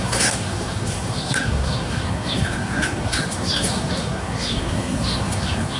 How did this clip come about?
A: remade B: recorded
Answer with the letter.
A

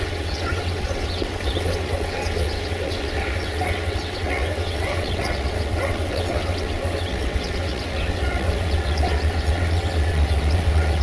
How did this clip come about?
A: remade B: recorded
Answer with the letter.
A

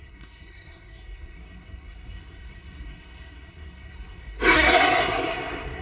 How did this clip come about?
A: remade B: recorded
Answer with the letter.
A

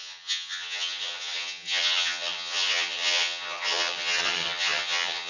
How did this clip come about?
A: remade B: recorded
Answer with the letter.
A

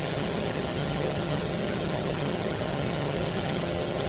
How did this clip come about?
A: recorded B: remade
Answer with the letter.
B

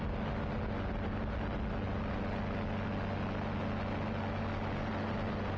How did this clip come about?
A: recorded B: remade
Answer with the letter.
A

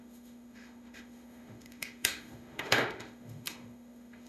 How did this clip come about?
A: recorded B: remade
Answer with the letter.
B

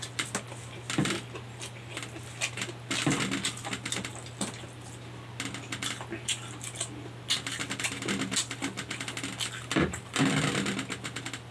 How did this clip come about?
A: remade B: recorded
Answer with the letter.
B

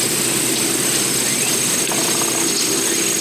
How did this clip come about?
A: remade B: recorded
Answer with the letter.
B